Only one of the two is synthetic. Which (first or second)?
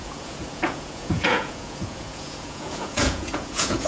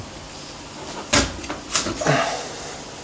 first